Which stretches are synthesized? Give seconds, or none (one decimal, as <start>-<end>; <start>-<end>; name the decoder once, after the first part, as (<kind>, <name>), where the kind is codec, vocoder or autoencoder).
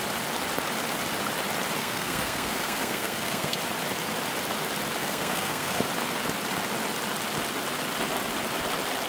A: 1.8-3.6 (codec, SNAC); 5.0-5.8